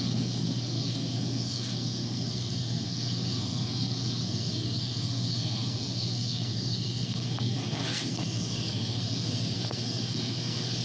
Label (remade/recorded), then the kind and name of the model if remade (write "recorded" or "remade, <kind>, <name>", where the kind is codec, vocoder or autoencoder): remade, codec, SNAC